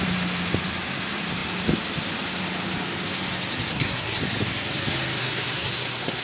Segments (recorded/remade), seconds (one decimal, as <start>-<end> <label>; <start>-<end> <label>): 0.0-3.7 recorded; 3.7-4.2 remade; 4.2-5.2 recorded; 5.2-6.2 remade